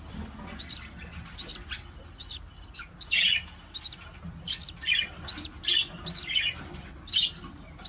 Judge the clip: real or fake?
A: real